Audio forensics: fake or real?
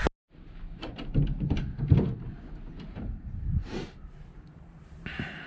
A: real